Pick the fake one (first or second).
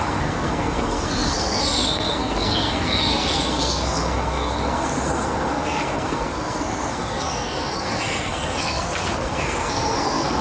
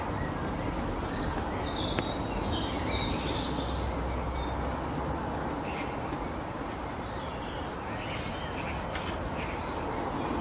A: first